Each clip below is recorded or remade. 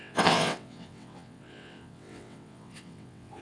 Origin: remade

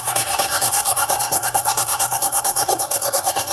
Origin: remade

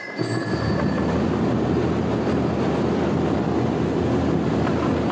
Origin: recorded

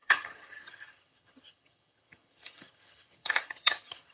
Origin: remade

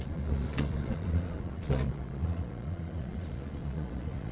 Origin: remade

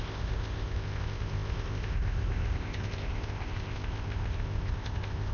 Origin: remade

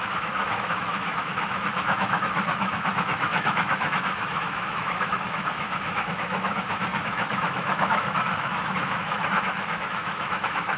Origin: remade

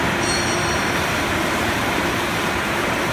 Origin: remade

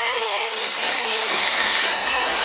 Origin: remade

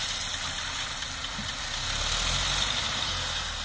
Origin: recorded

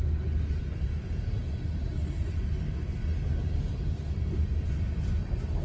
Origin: recorded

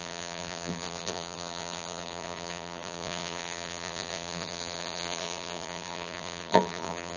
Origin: remade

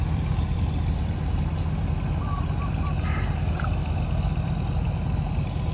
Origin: recorded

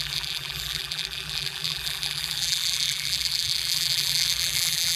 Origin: remade